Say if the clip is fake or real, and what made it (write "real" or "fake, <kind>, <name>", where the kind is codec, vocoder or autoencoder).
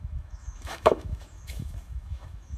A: fake, autoencoder, DAC-VAE